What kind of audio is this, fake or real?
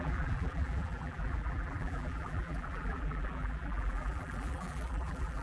fake